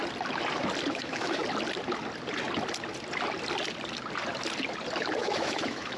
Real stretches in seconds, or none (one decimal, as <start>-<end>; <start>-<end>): 0.0-0.9; 1.4-5.0